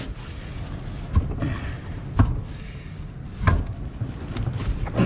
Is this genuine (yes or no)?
yes